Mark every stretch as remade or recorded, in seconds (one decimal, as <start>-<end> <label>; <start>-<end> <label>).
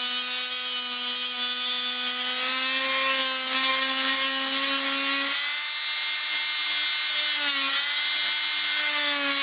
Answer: 0.0-9.4 recorded